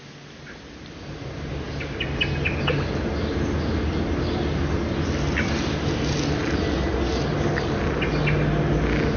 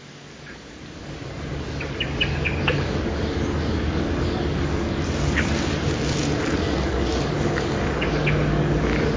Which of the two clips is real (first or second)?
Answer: first